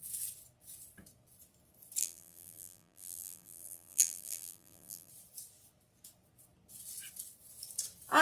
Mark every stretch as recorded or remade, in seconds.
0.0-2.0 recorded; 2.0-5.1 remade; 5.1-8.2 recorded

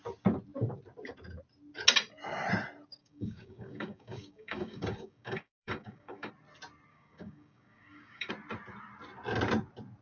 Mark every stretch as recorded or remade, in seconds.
0.0-3.0 recorded; 3.0-6.3 remade; 6.3-6.9 recorded; 6.9-8.3 remade; 8.3-10.0 recorded